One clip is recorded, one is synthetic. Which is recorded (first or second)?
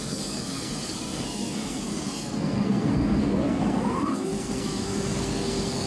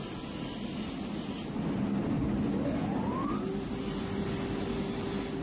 second